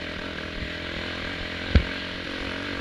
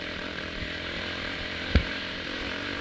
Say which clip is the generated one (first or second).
second